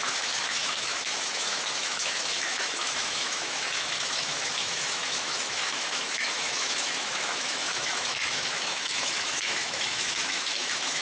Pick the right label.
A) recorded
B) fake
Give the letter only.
B